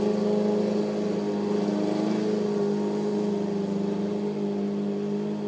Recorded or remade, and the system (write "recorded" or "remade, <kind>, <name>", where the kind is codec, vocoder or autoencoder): recorded